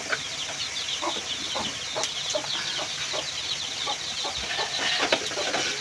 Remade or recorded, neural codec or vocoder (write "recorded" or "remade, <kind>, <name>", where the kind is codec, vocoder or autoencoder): recorded